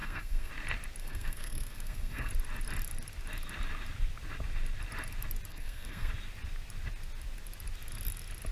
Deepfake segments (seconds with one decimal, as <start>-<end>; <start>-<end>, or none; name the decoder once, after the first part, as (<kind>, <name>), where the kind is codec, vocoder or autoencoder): 0.0-0.5 (codec, SNAC); 1.0-2.3; 5.5-6.1